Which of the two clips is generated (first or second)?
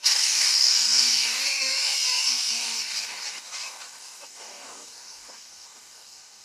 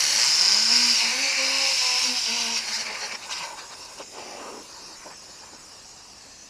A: first